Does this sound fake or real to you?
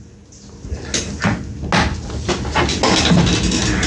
real